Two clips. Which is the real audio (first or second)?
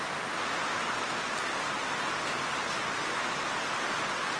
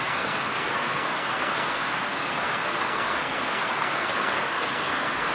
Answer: first